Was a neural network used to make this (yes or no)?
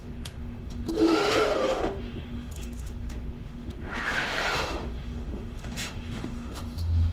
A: yes